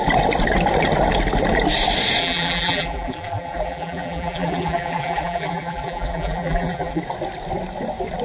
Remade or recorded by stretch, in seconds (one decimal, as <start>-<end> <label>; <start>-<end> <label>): 0.0-2.2 recorded; 2.2-7.0 remade; 7.0-8.2 recorded